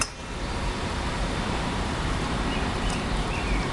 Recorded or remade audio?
remade